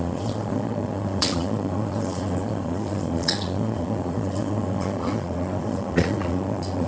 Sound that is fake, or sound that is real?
fake